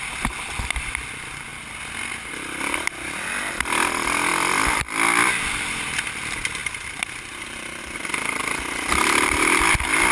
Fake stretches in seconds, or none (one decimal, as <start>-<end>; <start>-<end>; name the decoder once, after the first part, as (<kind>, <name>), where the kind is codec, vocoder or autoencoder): 4.3-5.9 (vocoder, BigVGAN v2); 6.6-7.8; 8.4-9.7